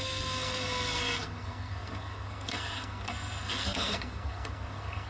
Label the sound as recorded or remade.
remade